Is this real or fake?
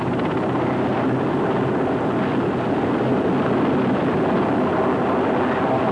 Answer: real